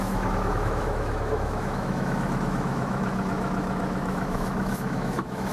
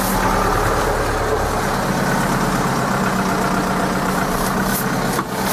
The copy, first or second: first